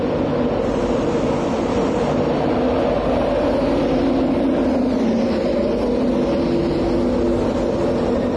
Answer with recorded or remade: recorded